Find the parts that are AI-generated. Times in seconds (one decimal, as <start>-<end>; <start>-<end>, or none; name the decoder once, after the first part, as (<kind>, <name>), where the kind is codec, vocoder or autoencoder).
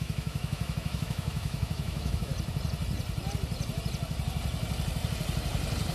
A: 0.0-2.3 (autoencoder, DAC-VAE)